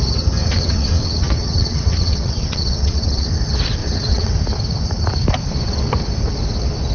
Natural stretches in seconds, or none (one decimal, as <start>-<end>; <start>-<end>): 0.0-0.4; 3.3-3.8; 4.3-6.9